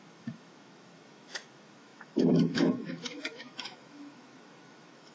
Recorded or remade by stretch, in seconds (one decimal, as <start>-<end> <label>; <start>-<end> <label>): 0.0-5.1 remade